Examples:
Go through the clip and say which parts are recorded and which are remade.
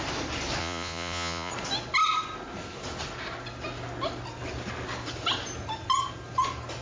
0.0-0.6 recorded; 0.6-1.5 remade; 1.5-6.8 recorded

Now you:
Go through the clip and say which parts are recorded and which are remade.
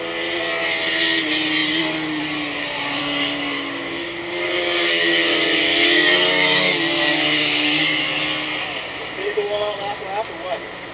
0.0-3.0 recorded; 3.0-8.1 remade; 8.1-9.2 recorded; 9.2-10.0 remade; 10.0-10.9 recorded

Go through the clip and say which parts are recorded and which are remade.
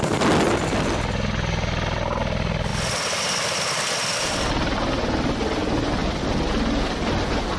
0.0-6.0 recorded; 6.0-6.5 remade; 6.5-7.6 recorded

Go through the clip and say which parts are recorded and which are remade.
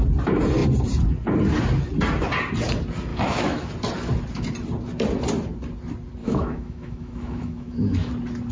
0.0-3.1 recorded; 3.1-3.7 remade; 3.7-6.2 recorded; 6.2-8.1 remade; 8.1-8.5 recorded